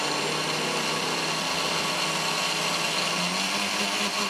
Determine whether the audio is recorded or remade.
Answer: recorded